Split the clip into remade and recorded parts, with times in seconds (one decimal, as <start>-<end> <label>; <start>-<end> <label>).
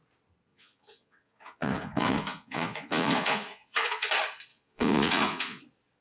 0.0-0.5 recorded; 0.5-4.1 remade; 4.1-4.5 recorded; 4.5-5.6 remade; 5.6-6.0 recorded